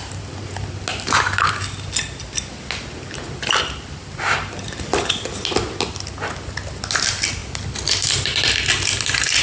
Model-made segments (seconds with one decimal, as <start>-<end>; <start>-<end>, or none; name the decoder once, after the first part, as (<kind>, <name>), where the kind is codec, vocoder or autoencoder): none